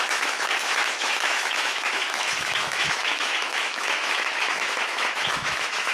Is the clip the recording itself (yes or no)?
no